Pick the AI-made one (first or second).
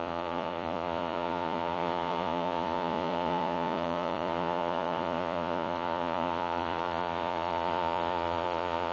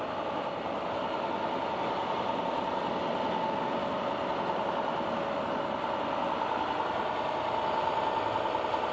first